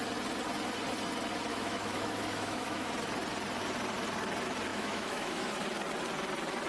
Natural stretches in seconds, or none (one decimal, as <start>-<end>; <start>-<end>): 0.0-1.5; 2.9-4.7; 5.5-6.7